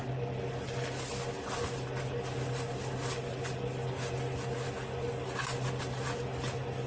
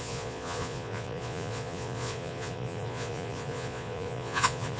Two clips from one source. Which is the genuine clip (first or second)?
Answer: first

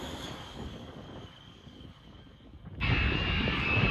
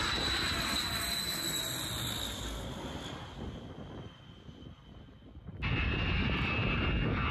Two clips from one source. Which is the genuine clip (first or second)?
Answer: second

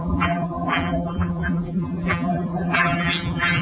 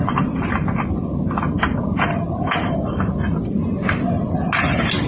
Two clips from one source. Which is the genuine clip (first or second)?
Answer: second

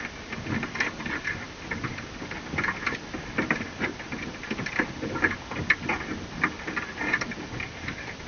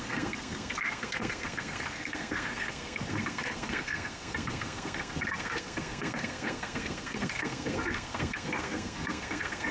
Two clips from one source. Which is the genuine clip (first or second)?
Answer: first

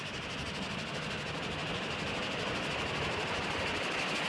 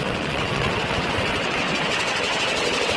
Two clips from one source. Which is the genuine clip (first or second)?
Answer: first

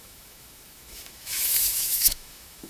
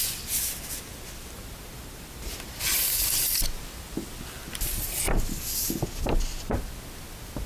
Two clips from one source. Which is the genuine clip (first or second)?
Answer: second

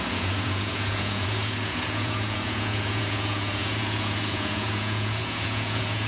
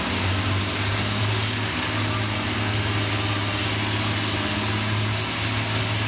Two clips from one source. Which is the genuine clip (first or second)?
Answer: second